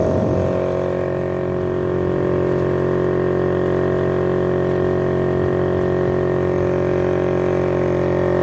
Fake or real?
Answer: real